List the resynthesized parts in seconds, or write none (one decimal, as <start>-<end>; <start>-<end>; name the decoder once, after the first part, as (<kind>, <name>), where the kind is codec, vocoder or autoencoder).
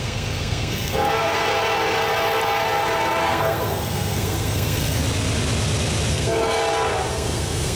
0.0-1.5 (codec, SNAC); 3.2-5.0; 6.1-6.6; 7.1-7.8